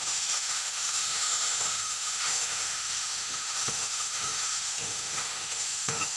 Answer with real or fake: fake